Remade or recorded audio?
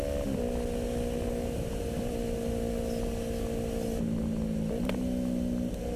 recorded